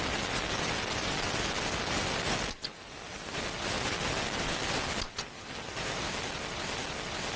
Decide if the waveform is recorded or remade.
recorded